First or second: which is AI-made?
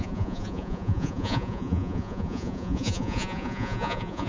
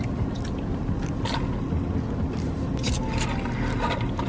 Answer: first